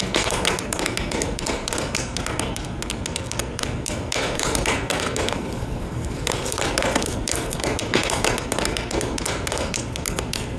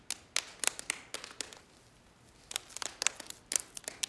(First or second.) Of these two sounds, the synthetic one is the first